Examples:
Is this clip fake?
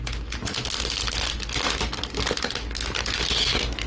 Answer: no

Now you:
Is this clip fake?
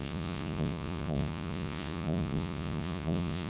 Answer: yes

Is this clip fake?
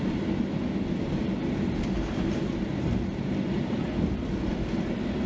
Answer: no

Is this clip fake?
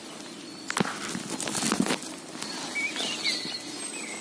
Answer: no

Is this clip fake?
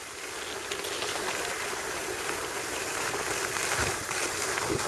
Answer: no